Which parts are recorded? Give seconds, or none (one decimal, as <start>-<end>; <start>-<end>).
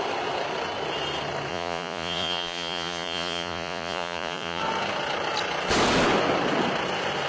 0.0-1.5; 4.6-7.3